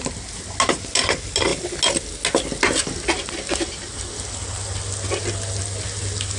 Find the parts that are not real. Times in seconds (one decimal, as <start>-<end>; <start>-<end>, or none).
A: none